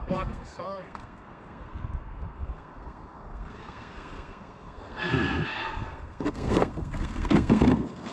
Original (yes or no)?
no